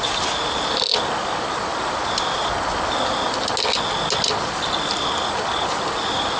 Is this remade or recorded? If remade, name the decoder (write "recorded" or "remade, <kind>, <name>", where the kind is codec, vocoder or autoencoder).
recorded